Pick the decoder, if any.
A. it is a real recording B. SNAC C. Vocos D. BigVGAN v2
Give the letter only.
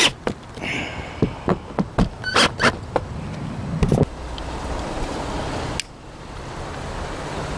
A